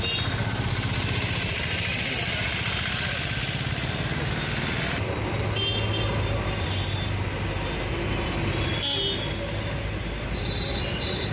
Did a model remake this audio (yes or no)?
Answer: no